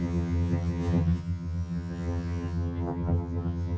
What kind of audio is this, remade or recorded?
remade